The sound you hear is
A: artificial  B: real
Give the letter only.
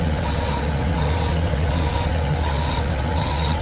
A